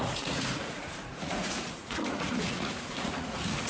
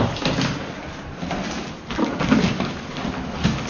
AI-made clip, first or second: first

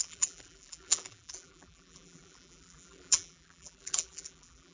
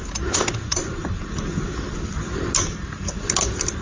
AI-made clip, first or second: first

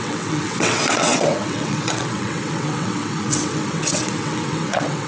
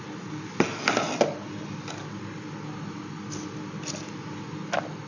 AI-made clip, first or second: first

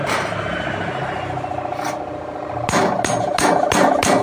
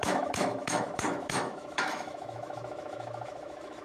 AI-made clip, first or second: second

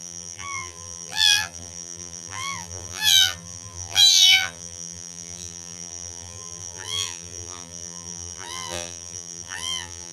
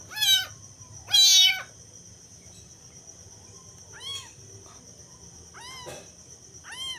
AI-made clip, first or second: first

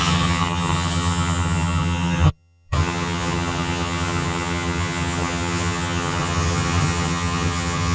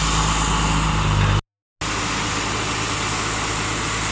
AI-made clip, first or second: first